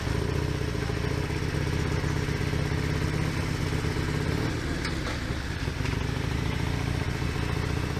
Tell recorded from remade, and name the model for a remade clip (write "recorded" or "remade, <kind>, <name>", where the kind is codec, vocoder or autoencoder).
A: recorded